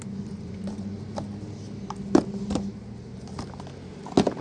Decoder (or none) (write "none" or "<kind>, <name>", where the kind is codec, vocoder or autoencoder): none